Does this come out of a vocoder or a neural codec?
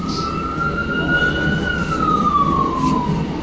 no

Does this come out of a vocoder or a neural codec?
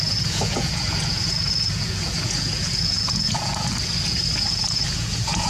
yes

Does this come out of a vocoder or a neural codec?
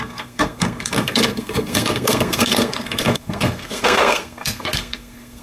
yes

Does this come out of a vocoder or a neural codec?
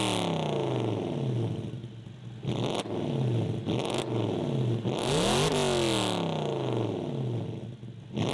no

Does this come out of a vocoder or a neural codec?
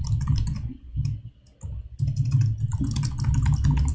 no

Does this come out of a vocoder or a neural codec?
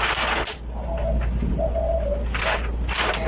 no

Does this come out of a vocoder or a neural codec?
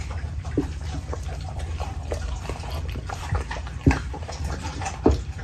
yes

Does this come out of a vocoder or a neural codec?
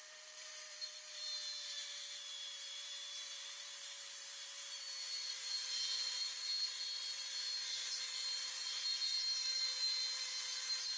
yes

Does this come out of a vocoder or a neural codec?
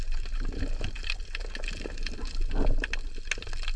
no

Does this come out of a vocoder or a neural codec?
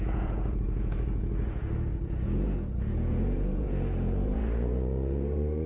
yes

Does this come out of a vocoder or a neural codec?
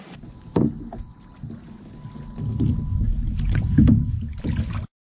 no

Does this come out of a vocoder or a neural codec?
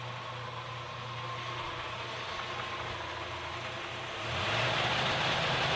no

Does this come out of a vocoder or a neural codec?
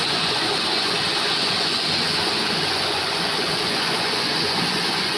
yes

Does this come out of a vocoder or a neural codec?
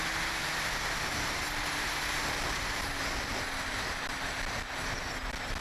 no